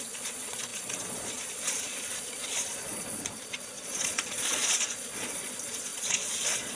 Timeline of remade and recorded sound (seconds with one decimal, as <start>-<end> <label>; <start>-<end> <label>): 0.0-6.7 remade